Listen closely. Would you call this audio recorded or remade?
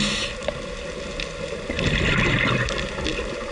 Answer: recorded